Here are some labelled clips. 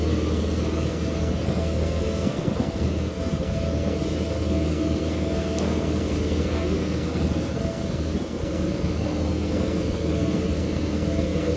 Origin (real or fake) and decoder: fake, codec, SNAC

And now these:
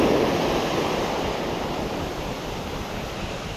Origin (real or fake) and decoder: real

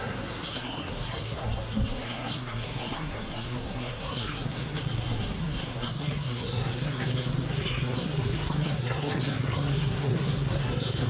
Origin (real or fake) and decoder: fake, codec, SNAC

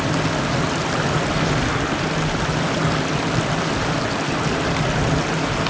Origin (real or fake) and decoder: real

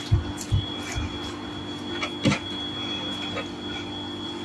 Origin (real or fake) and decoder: real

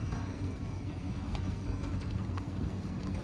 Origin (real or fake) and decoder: fake, codec, SNAC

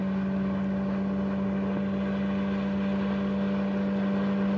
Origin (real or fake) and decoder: real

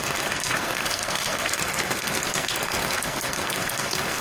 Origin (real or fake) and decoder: fake, codec, SNAC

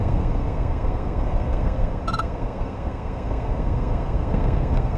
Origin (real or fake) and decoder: fake, codec, SNAC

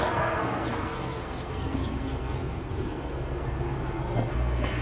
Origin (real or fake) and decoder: fake, codec, SNAC